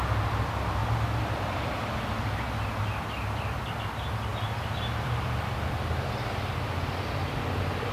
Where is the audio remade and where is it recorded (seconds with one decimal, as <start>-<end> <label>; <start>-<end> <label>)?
0.0-0.8 recorded; 0.8-2.0 remade; 2.0-4.3 recorded; 4.3-6.4 remade; 6.4-7.9 recorded